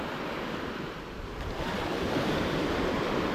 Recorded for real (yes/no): no